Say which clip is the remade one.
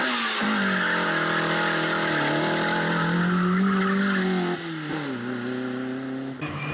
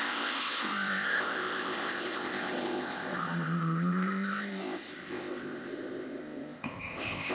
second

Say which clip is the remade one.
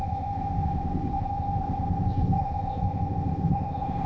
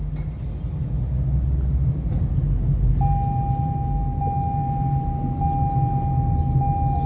first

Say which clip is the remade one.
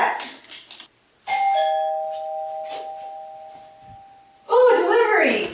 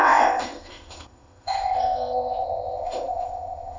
second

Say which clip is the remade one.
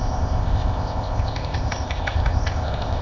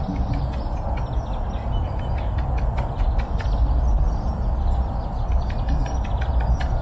first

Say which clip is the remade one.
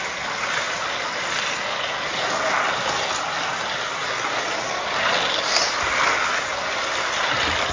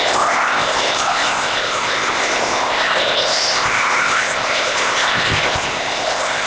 second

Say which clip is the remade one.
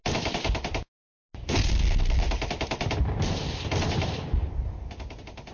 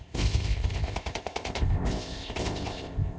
second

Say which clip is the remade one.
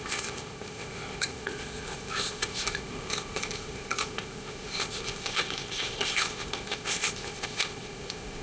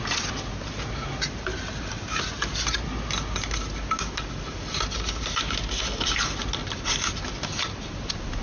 first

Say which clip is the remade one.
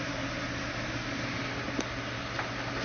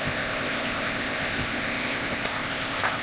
second